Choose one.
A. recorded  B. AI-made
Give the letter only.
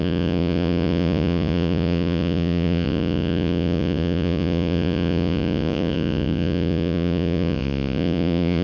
B